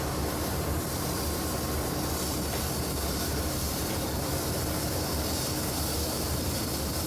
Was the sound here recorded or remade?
remade